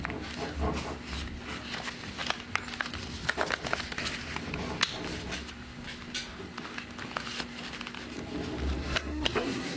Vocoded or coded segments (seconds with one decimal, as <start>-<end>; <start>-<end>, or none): 8.8-9.8